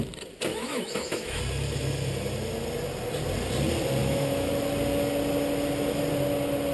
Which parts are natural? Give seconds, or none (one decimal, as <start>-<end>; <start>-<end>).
0.0-0.5; 1.4-4.0; 4.5-6.7